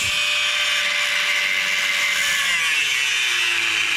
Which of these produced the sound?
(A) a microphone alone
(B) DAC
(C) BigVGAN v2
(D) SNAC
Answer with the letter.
A